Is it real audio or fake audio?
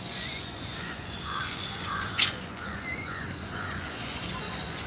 fake